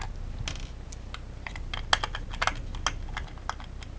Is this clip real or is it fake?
real